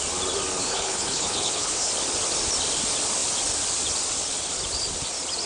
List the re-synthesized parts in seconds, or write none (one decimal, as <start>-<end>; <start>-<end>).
0.6-1.9